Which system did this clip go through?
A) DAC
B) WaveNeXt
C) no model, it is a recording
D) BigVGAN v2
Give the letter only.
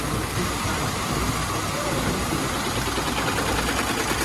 C